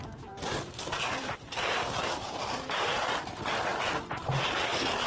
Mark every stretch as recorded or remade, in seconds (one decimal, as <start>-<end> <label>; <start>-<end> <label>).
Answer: 0.0-3.1 remade; 3.1-5.1 recorded